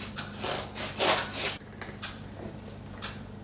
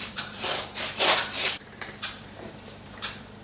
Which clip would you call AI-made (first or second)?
second